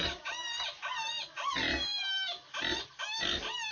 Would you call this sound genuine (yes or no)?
yes